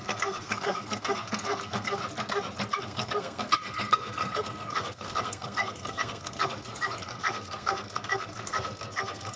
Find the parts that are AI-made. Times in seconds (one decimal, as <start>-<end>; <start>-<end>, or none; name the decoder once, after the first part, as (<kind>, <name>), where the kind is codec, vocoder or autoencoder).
0.0-2.0 (codec, SNAC); 2.8-9.4